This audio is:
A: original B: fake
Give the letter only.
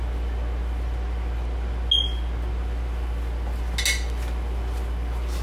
A